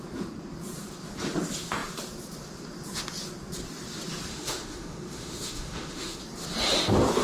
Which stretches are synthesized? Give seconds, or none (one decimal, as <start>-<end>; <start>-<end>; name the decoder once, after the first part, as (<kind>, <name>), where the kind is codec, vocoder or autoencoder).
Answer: 4.3-6.2 (autoencoder, DAC-VAE)